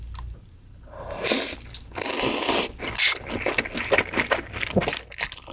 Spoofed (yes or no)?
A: no